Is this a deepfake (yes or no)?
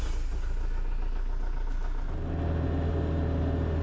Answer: no